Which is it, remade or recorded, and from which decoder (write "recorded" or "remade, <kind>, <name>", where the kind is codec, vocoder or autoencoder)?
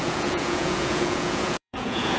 remade, vocoder, Vocos